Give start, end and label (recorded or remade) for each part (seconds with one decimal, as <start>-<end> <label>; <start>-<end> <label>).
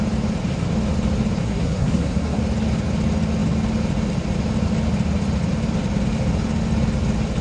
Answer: 0.0-1.4 recorded; 1.4-2.4 remade; 2.4-7.4 recorded